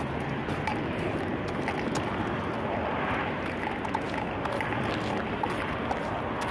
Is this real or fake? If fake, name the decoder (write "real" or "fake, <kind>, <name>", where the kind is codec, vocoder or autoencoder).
real